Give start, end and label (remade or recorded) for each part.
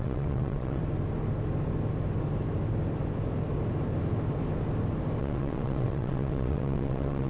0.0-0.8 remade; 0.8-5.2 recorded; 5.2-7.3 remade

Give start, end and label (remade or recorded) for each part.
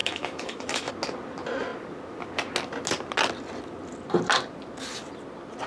0.0-0.9 remade; 0.9-5.7 recorded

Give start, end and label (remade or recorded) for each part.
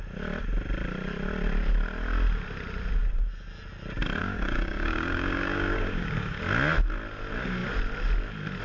0.0-4.2 recorded; 4.2-6.4 remade; 6.4-8.6 recorded